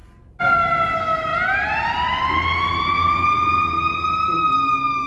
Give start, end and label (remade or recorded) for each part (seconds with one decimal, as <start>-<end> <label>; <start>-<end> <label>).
0.0-5.1 recorded